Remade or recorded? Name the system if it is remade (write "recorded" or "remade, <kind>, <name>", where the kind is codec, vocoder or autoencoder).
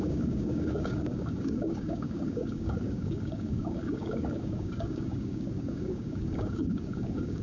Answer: remade, codec, DAC